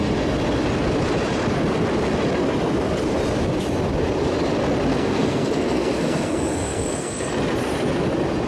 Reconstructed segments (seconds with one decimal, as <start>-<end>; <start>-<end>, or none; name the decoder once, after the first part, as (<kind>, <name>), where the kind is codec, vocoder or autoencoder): 4.9-7.3 (codec, SNAC)